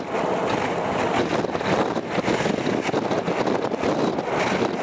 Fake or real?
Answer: real